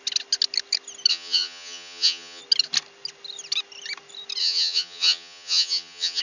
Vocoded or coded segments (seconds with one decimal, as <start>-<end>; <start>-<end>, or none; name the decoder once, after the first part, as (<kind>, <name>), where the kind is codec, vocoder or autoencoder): 1.1-2.4 (vocoder, HiFi-GAN); 4.4-6.2